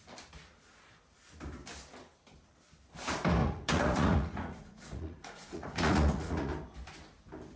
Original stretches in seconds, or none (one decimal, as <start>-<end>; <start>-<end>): 0.0-3.4; 6.5-7.6